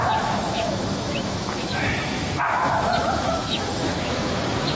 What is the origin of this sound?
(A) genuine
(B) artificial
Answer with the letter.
B